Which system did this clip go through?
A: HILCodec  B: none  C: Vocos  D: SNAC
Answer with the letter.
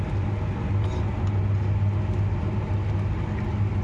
B